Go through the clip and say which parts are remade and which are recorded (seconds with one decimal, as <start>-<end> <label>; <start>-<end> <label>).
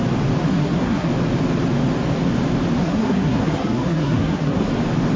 0.0-0.4 recorded; 0.4-1.1 remade; 1.1-2.8 recorded; 2.8-4.7 remade; 4.7-5.2 recorded